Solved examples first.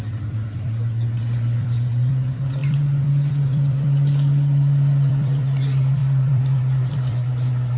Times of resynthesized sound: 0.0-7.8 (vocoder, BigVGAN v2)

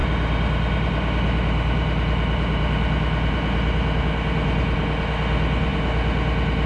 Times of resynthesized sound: none

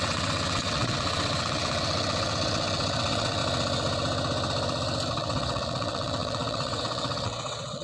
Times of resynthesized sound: 0.0-3.4 (vocoder, WaveNeXt); 5.1-7.8

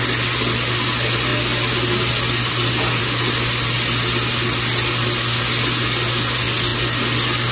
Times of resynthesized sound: none

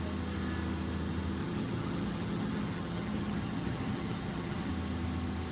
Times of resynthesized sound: 1.4-4.7 (vocoder, HiFi-GAN)